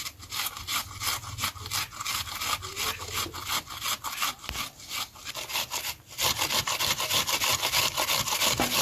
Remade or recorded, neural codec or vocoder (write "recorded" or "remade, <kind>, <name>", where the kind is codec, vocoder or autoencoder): recorded